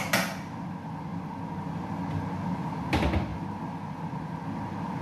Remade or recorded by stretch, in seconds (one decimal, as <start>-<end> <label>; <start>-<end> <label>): 0.0-5.0 recorded